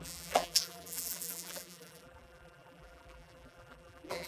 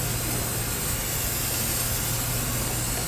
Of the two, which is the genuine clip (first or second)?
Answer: second